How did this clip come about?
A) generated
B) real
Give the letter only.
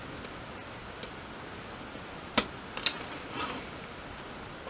B